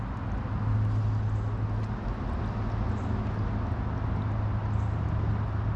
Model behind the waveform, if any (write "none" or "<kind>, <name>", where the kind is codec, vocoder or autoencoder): none